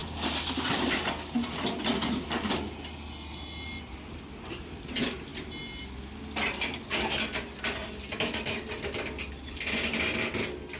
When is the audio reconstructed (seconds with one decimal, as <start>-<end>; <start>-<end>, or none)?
none